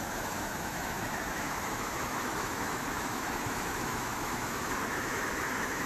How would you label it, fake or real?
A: fake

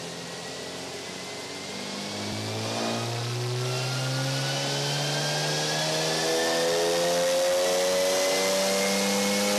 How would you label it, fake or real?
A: real